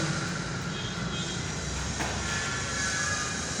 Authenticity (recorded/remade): recorded